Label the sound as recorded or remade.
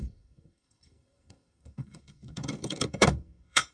remade